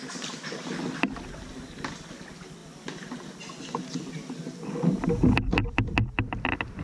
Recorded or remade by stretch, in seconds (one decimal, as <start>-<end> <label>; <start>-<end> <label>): 0.0-6.8 recorded